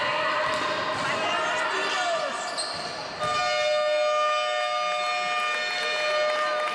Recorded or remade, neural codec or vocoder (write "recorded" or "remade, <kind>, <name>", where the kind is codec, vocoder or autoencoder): recorded